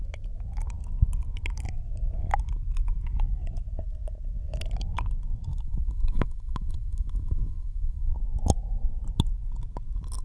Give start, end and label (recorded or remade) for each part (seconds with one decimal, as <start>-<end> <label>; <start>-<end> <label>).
0.0-5.5 recorded; 5.5-8.1 remade; 8.1-10.2 recorded